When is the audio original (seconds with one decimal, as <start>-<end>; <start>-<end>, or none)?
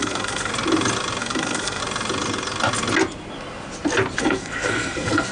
0.5-1.2; 1.8-4.2